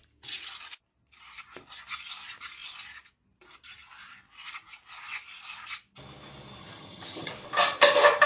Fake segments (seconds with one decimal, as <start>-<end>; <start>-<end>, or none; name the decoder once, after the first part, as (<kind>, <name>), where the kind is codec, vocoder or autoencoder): 6.6-7.3 (vocoder, HiFi-GAN)

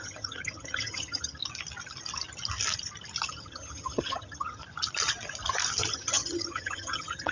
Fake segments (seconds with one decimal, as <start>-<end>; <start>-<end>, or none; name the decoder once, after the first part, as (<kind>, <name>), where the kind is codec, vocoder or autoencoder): 0.0-1.4 (vocoder, HiFi-GAN); 3.3-4.6; 5.9-7.3

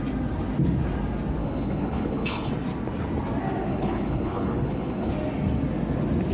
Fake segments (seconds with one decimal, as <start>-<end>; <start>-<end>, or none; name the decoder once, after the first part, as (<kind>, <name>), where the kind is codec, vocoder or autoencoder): 1.4-2.5 (codec, HILCodec); 3.7-5.1

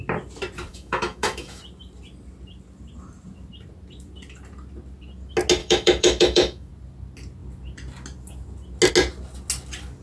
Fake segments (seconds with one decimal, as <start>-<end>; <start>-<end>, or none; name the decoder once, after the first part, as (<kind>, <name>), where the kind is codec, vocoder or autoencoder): 0.7-1.6 (autoencoder, DAC-VAE); 5.6-6.7

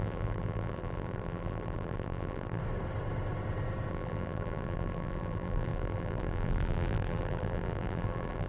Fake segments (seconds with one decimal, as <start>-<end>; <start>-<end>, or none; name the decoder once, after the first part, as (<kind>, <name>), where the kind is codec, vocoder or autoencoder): 0.0-2.6 (vocoder, BigVGAN v2); 3.9-8.5